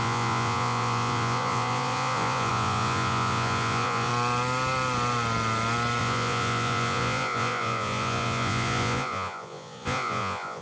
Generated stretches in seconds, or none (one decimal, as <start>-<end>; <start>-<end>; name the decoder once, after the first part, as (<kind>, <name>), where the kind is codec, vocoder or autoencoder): 0.0-4.1 (vocoder, Vocos); 6.0-10.6